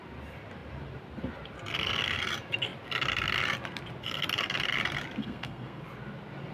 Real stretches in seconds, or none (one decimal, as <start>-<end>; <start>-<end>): 0.0-5.2; 5.8-6.5